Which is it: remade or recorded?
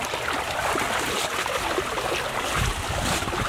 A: recorded